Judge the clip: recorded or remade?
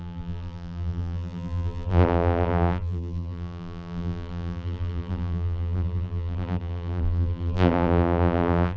remade